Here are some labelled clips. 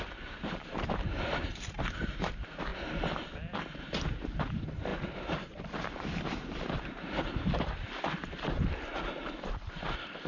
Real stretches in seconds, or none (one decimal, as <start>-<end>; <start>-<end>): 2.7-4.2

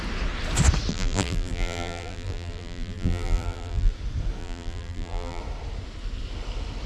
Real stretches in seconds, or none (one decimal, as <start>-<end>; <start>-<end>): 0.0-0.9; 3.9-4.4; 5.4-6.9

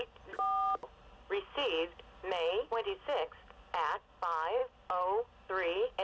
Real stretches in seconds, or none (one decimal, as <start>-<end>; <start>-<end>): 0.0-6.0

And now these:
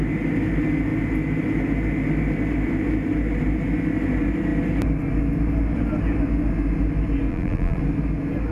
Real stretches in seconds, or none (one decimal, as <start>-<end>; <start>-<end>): 0.0-7.3; 7.8-8.5

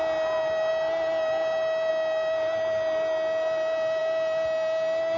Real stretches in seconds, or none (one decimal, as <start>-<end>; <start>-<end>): 0.0-5.2

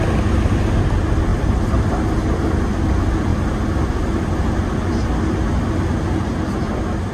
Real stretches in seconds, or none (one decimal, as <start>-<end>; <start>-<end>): 0.0-7.1

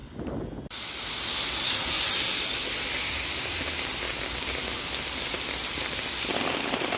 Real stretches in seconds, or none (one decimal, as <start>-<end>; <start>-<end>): 0.0-4.2